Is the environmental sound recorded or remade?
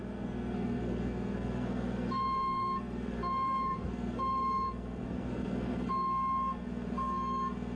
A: remade